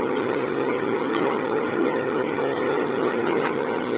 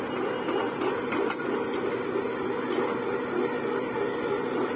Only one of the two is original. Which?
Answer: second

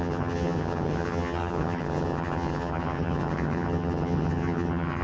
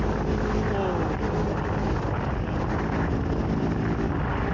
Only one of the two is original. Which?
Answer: second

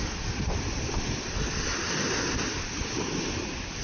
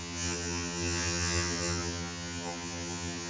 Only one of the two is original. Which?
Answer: first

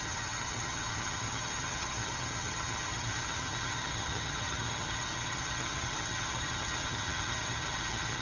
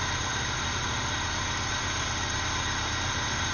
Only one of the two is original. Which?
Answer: second